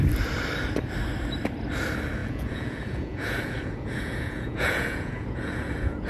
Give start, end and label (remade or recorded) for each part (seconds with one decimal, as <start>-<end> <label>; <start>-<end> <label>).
0.0-2.2 recorded; 2.2-6.1 remade